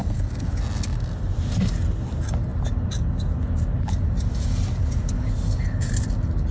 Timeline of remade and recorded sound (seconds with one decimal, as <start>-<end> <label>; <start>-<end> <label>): 0.0-0.5 remade; 0.5-6.5 recorded